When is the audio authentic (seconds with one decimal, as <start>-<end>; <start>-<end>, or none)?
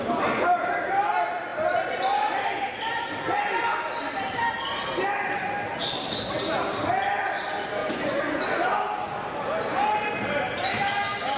0.0-7.8; 8.8-11.4